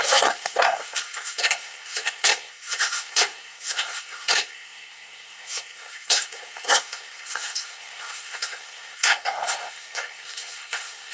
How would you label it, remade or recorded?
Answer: remade